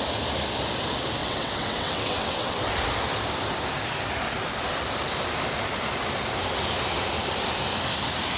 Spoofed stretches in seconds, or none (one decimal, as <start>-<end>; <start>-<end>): 1.2-2.7